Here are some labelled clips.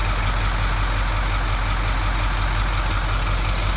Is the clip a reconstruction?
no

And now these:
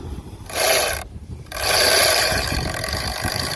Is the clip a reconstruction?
yes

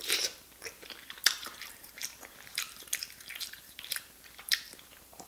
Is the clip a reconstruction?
yes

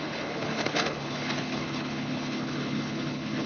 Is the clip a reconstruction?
yes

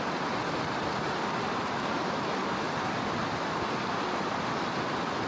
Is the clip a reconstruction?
no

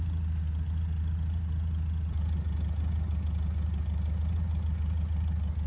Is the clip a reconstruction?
no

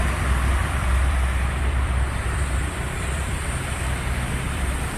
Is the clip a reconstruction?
yes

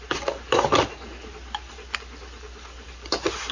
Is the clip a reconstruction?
no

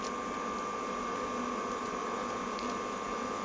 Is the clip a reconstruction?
no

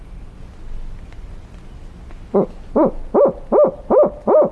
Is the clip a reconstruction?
no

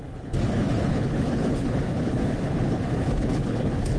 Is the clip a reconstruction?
yes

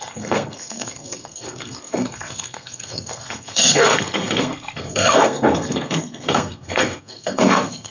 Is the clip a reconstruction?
yes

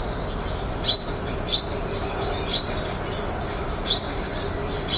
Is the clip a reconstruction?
no